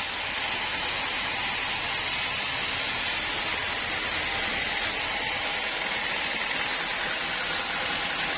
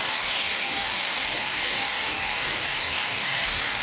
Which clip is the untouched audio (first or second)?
first